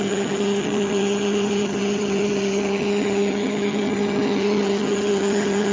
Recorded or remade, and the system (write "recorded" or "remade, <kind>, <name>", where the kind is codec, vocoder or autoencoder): remade, vocoder, HiFi-GAN